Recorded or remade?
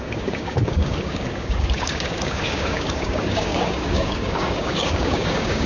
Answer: remade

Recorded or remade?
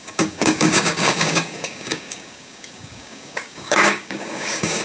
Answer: remade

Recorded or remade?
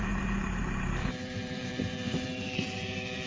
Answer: recorded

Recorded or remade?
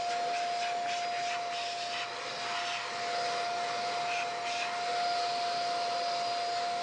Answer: recorded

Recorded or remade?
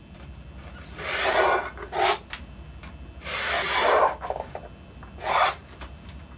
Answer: recorded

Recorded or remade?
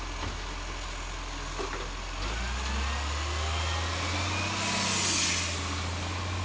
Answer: recorded